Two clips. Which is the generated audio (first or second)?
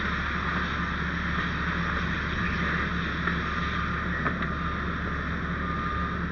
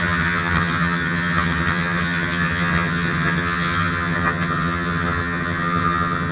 second